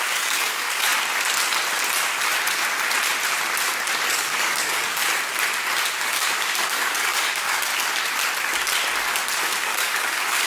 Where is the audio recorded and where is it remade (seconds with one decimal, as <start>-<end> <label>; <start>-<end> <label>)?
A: 0.0-0.9 remade; 0.9-4.1 recorded; 4.1-5.0 remade; 5.0-6.0 recorded; 6.0-7.7 remade; 7.7-9.4 recorded; 9.4-10.5 remade